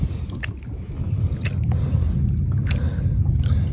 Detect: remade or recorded recorded